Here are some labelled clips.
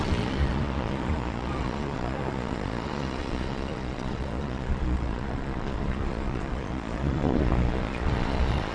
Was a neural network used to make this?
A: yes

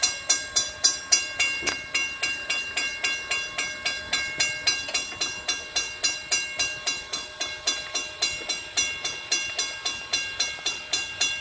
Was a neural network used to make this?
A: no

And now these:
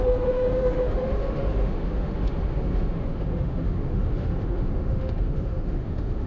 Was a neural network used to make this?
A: yes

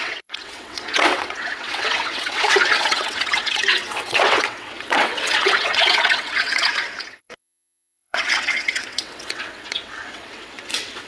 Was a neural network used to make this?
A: yes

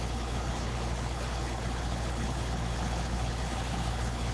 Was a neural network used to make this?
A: yes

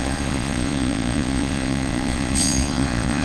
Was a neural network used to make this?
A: yes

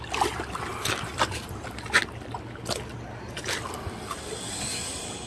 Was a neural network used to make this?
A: no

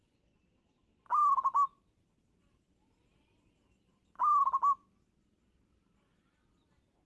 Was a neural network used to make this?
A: no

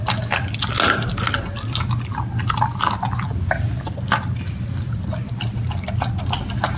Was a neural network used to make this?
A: no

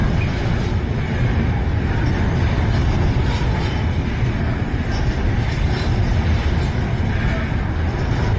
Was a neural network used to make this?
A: no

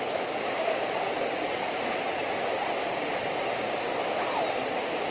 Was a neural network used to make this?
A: no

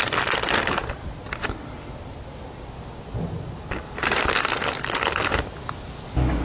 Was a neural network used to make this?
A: no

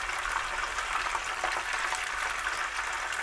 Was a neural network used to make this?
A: no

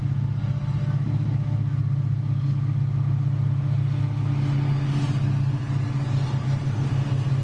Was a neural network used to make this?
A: no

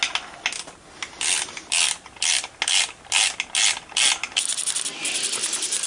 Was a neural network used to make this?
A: no